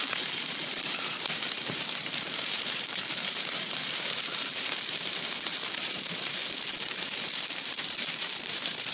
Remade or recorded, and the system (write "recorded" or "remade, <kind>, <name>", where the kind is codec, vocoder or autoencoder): remade, vocoder, BigVGAN v2